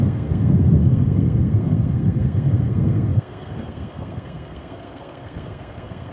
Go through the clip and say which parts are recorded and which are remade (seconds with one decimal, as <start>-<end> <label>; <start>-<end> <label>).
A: 0.0-6.1 remade